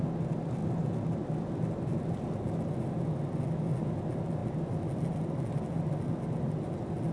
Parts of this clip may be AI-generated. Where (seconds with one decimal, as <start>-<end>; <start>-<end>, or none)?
none